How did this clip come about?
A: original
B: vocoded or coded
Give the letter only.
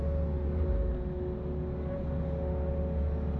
A